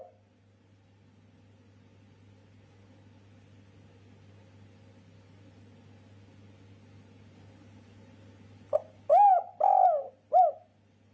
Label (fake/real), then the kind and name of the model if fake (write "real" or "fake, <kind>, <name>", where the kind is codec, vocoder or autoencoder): real